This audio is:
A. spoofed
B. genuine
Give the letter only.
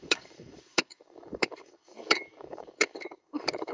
A